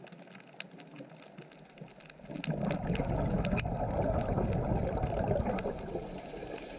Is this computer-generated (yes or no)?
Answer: no